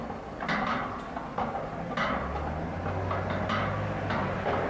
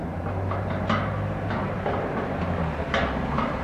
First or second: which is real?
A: first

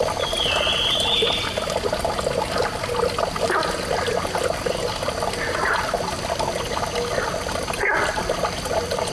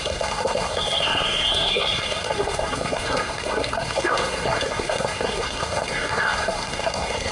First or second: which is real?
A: first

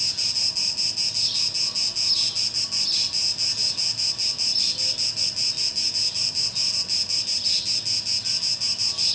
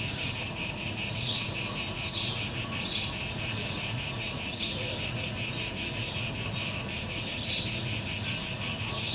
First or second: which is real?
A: first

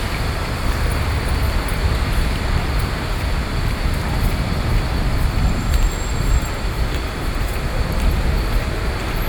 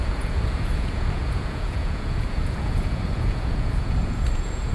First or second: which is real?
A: first